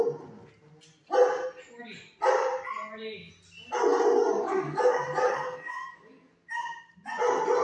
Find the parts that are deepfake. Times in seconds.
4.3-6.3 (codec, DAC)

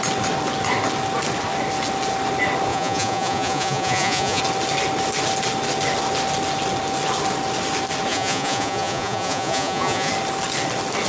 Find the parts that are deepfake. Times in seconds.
2.7-4.4 (vocoder, Vocos); 8.1-10.1

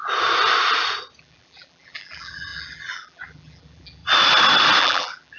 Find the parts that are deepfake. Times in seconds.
1.2-4.0 (vocoder, BigVGAN v2); 4.8-5.4

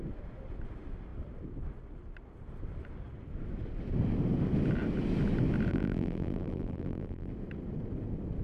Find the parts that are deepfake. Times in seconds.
5.7-7.3 (vocoder, BigVGAN v2)

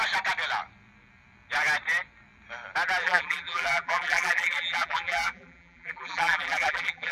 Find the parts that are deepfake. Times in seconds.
3.0-7.1 (vocoder, BigVGAN v2)

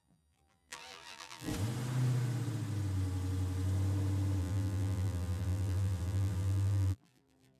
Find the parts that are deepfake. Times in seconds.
0.0-1.5 (vocoder, BigVGAN v2); 4.4-7.6

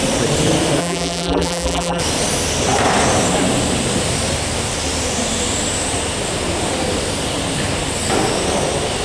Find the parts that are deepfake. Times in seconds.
0.8-2.0 (vocoder, BigVGAN v2)